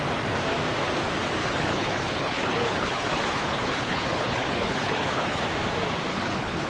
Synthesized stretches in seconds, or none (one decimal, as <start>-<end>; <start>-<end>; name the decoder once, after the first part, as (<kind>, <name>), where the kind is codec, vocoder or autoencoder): 1.4-5.4 (codec, HILCodec); 6.1-6.7

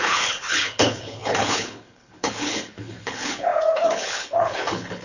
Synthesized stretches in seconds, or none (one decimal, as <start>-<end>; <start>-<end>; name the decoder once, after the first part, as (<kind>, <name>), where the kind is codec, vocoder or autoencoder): 0.0-5.0 (codec, HILCodec)

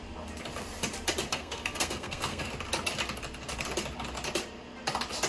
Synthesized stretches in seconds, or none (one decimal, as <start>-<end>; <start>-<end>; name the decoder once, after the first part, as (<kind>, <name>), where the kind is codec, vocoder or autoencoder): 1.3-2.5 (codec, SNAC)

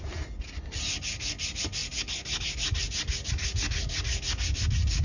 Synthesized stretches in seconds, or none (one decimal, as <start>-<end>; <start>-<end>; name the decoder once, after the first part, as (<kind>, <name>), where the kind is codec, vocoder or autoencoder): none

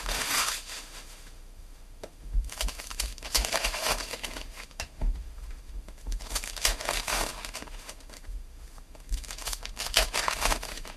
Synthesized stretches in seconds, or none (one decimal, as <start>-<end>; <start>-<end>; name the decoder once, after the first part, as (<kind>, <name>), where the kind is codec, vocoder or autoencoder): 0.0-11.0 (autoencoder, DAC-VAE)

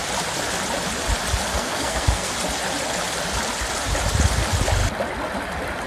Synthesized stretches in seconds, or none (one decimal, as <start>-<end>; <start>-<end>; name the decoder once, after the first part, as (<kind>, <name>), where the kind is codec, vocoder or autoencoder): 1.5-2.3 (codec, SNAC)

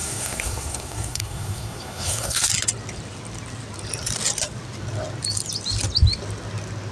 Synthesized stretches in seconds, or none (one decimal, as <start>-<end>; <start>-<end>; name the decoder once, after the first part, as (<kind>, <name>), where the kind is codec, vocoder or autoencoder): 0.0-2.5 (codec, SNAC)

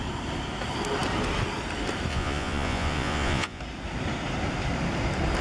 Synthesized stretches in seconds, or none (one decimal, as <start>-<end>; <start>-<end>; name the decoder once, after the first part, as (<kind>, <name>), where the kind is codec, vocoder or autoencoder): 2.1-3.6 (vocoder, Vocos)